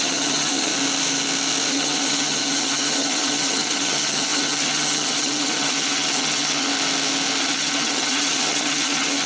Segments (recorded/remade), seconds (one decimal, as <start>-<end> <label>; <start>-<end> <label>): 0.0-0.7 remade; 0.7-1.7 recorded; 1.7-6.7 remade; 6.7-7.4 recorded; 7.4-9.3 remade